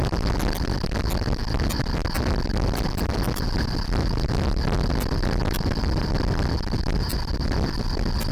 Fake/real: fake